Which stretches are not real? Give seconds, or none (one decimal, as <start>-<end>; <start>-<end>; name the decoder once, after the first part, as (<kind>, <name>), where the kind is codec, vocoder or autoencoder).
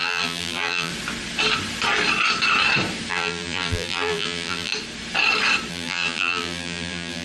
0.0-0.9 (vocoder, BigVGAN v2); 3.1-4.7; 5.7-7.2